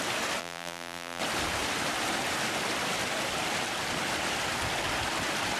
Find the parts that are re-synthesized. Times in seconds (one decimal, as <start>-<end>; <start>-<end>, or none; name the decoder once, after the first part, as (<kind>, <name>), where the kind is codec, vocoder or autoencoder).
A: 0.4-1.2 (vocoder, BigVGAN v2)